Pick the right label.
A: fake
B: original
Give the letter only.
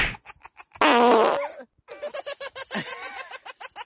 B